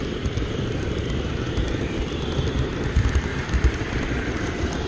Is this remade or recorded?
remade